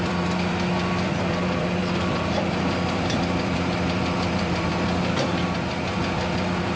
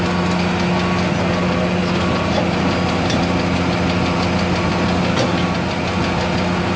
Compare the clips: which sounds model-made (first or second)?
first